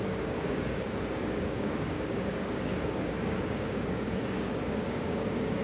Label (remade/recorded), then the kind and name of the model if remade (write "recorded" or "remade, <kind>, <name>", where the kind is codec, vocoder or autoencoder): remade, codec, DAC